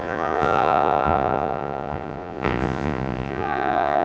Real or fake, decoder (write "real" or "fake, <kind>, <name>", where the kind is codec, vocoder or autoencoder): fake, vocoder, Vocos